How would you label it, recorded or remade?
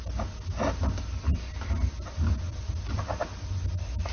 recorded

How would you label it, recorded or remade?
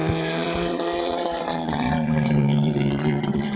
remade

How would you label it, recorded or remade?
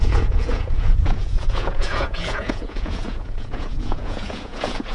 remade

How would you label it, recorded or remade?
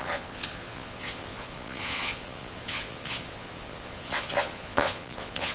remade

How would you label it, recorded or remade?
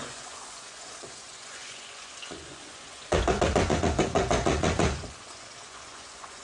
remade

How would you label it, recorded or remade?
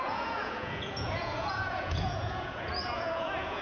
remade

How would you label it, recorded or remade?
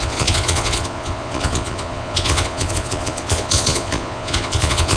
remade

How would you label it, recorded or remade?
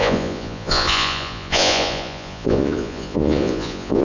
remade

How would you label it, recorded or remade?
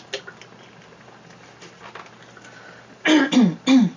recorded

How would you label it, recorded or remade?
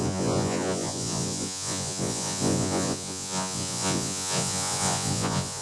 remade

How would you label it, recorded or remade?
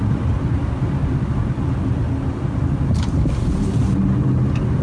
recorded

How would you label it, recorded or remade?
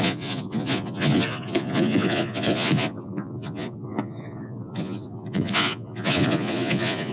remade